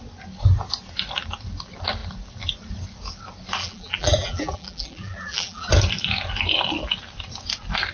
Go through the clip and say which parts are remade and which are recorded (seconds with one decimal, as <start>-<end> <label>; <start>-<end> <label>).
0.0-3.6 recorded; 3.6-5.7 remade; 5.7-7.9 recorded